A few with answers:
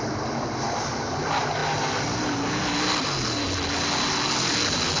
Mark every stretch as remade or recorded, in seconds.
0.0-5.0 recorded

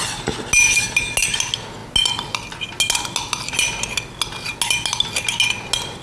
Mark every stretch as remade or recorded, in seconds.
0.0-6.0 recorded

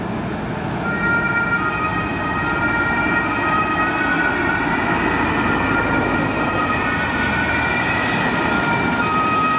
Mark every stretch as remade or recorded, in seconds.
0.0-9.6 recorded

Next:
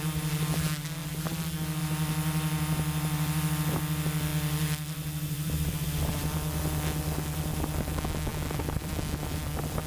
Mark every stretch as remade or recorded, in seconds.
0.0-4.3 recorded; 4.3-6.6 remade; 6.6-8.3 recorded; 8.3-8.9 remade; 8.9-9.9 recorded

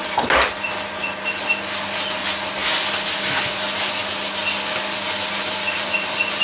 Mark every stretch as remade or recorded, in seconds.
0.0-6.4 recorded

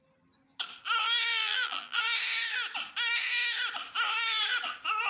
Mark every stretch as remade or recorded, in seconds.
0.0-1.3 recorded; 1.3-2.0 remade; 2.0-5.1 recorded